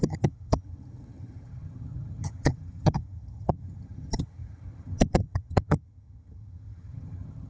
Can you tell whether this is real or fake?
fake